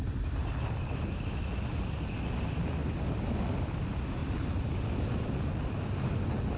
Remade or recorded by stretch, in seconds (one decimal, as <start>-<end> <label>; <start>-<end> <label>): 0.0-6.6 recorded